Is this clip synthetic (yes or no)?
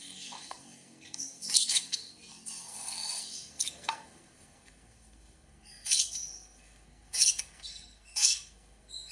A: yes